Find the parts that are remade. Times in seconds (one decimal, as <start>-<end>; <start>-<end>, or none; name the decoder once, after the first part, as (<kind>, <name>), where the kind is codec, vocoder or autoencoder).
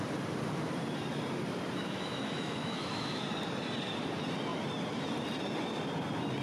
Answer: 1.8-3.2 (autoencoder, DAC-VAE)